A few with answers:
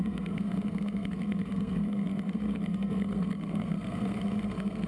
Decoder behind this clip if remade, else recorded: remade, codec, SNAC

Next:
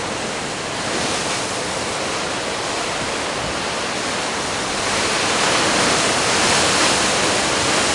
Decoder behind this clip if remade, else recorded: recorded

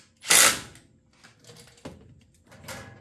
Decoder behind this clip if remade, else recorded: recorded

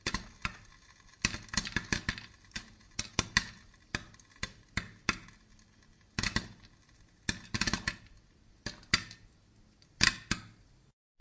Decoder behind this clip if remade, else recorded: recorded